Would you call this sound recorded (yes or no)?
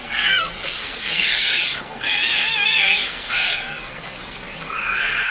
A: no